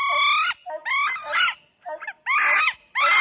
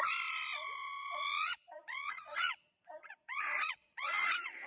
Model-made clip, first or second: second